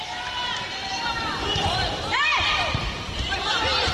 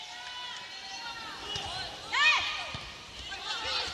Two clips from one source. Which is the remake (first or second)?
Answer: first